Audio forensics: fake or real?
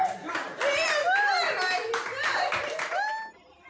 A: real